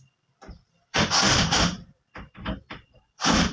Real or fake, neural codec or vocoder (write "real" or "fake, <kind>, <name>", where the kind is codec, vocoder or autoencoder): fake, vocoder, BigVGAN v2